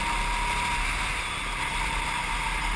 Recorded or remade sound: recorded